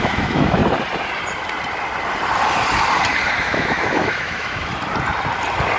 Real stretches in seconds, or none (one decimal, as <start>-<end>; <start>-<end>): 0.6-3.4; 4.7-5.8